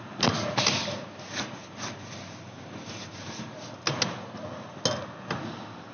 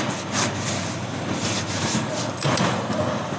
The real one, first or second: first